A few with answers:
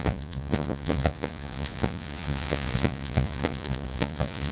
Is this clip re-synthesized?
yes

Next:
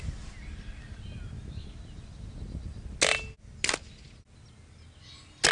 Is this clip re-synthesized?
no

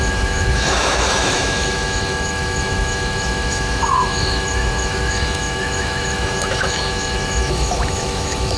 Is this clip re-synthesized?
yes